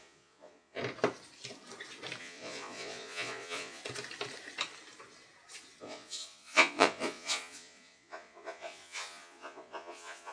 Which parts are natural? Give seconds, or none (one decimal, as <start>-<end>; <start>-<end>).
0.8-2.2; 3.8-5.8

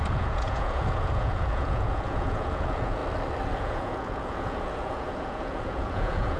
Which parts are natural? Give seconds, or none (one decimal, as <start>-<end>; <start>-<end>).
3.0-3.6

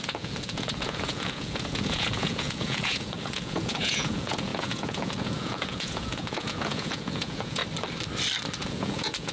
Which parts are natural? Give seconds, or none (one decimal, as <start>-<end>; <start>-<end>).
7.6-8.7